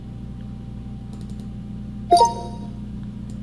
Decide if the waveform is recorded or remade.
recorded